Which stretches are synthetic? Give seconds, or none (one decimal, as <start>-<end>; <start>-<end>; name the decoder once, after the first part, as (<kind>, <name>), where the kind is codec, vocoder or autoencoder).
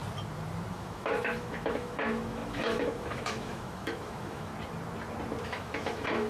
0.7-4.5 (autoencoder, DAC-VAE); 5.4-6.3